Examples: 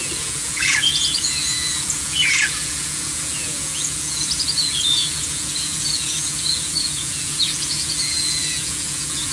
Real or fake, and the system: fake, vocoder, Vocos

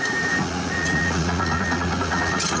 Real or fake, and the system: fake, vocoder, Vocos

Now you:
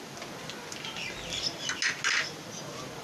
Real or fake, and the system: real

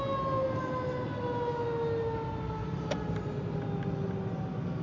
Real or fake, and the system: real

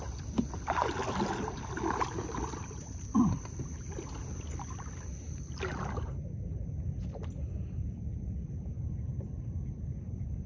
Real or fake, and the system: real